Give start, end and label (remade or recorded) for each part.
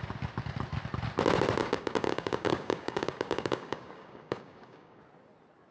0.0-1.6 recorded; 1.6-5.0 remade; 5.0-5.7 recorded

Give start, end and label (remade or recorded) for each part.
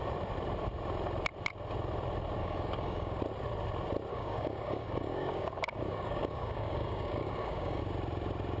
0.0-2.4 recorded; 2.4-3.2 remade; 3.2-4.1 recorded; 4.1-7.8 remade; 7.8-8.6 recorded